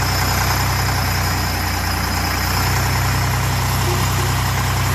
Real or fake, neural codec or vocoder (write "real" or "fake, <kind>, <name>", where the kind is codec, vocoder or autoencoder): real